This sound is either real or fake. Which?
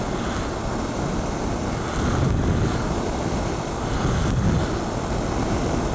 real